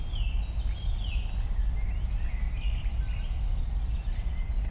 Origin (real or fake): real